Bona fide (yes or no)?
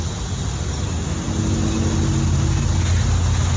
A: yes